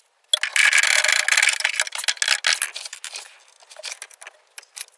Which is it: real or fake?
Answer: real